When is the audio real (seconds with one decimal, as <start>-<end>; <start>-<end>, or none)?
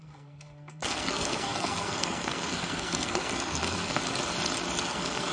4.0-4.8